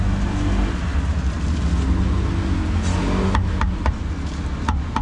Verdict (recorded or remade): recorded